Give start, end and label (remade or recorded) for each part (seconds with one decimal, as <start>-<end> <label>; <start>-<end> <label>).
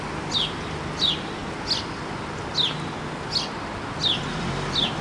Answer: 0.0-5.0 recorded